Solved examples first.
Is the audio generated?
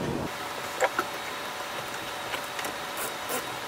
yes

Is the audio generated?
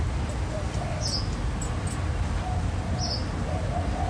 no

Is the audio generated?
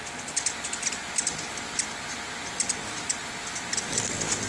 no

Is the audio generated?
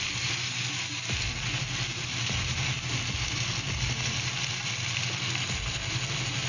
yes